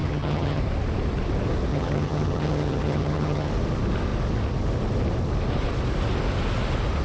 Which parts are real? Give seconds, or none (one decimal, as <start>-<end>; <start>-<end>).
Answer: 0.6-1.7; 3.5-7.0